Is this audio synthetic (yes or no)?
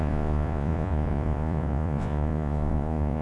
yes